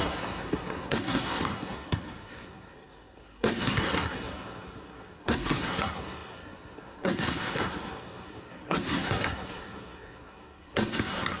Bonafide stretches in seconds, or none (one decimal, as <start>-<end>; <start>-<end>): none